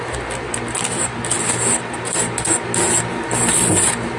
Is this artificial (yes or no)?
no